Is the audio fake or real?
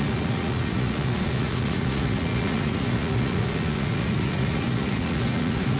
fake